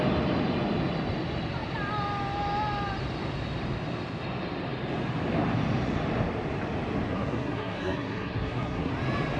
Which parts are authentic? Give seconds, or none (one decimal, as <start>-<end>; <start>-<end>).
0.0-7.1; 8.9-9.4